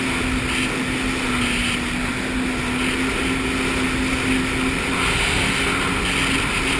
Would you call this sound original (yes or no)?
yes